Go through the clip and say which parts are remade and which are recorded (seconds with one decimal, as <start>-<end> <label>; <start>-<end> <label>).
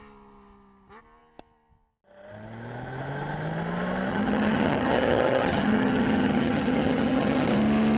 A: 0.0-4.1 recorded; 4.1-7.5 remade; 7.5-8.0 recorded